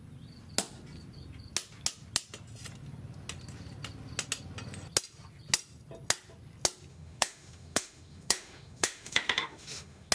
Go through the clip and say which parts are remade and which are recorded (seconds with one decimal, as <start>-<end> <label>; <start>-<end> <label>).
0.0-6.9 recorded; 6.9-10.1 remade